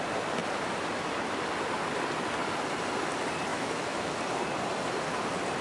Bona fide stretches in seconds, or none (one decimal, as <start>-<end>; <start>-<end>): 0.0-3.5; 4.1-5.6